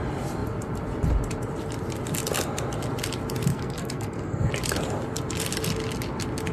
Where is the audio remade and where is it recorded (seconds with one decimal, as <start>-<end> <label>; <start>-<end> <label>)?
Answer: 0.0-3.5 recorded; 3.5-4.5 remade; 4.5-6.5 recorded